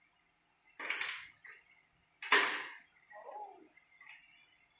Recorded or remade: recorded